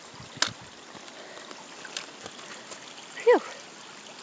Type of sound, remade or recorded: recorded